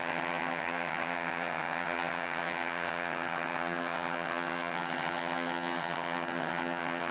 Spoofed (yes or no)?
yes